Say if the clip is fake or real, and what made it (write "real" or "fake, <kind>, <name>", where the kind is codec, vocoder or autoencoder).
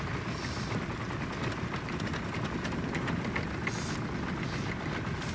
real